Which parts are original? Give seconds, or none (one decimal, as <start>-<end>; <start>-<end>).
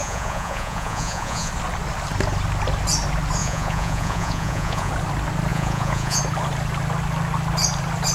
1.5-3.4; 4.9-5.5; 6.2-8.1